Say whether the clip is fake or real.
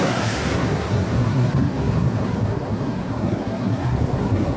fake